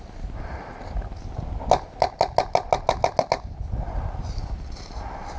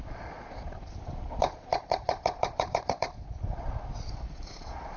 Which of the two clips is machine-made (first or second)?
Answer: second